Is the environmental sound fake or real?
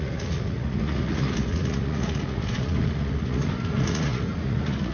fake